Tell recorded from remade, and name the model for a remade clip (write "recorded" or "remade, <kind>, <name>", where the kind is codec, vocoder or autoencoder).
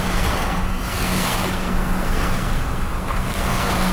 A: remade, codec, SNAC